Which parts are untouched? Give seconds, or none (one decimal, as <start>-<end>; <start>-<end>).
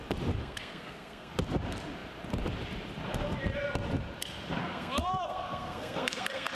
0.0-0.4; 1.3-4.6